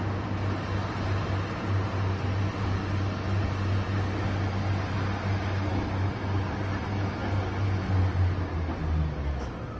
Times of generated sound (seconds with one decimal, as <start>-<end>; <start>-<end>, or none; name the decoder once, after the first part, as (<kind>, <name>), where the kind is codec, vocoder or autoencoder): none